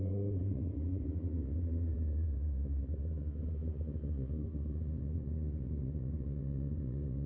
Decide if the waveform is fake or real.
fake